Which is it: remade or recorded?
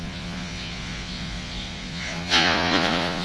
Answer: remade